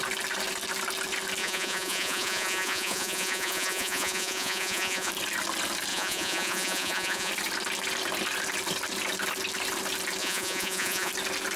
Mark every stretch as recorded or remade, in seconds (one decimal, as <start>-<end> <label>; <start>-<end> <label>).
0.0-1.4 recorded; 1.4-5.1 remade; 5.1-5.9 recorded; 5.9-7.3 remade; 7.3-10.2 recorded; 10.2-11.1 remade; 11.1-11.6 recorded